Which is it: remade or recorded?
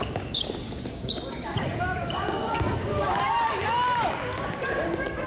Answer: remade